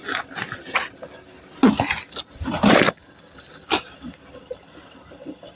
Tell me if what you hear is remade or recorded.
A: recorded